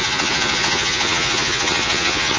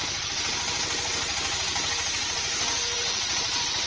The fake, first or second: first